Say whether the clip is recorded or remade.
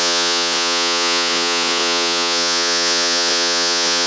remade